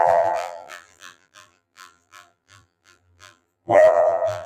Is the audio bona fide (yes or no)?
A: no